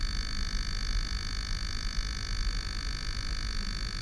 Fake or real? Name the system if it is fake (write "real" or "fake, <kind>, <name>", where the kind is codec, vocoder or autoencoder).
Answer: real